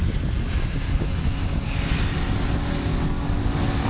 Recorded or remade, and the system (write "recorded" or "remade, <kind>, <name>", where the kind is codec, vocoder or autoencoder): recorded